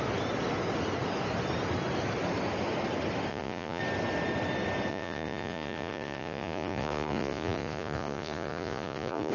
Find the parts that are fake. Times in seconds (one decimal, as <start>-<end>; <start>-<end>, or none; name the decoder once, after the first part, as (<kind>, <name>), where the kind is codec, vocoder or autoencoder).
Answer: 3.3-3.8 (vocoder, Vocos); 4.9-9.3